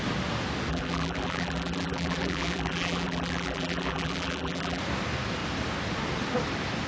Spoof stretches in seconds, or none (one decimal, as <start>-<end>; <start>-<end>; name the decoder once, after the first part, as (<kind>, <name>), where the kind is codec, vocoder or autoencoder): 0.7-4.8 (vocoder, BigVGAN v2)